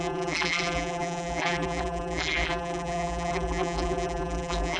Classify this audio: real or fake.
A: fake